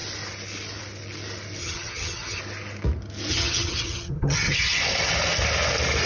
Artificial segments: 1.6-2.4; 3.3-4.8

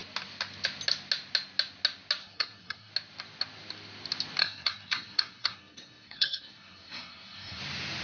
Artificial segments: 2.2-2.9; 4.4-7.6

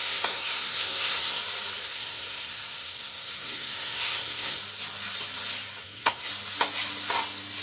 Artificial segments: 0.0-1.4; 1.8-4.6; 5.8-6.3

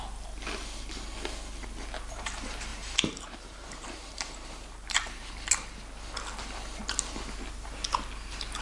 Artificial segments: 2.7-5.3

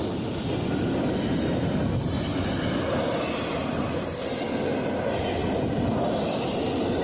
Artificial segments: 5.4-7.0